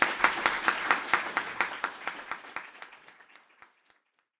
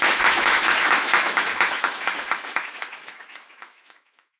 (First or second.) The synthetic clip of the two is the second